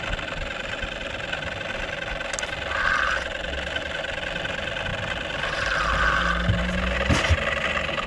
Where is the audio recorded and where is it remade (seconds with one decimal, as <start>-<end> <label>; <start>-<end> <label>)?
0.0-8.1 recorded